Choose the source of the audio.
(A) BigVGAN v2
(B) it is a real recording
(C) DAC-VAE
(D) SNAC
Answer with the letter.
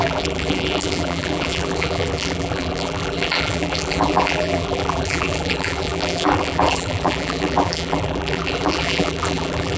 A